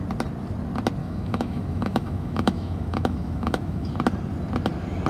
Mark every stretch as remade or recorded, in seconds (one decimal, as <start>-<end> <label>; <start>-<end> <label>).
0.0-1.0 recorded; 1.0-3.9 remade; 3.9-5.1 recorded